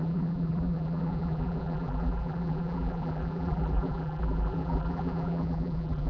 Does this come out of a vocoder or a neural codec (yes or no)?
yes